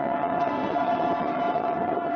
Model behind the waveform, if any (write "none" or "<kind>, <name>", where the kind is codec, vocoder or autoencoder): vocoder, WaveNeXt